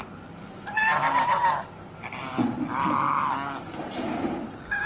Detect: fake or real real